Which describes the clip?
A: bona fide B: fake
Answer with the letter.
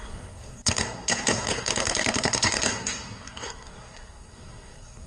B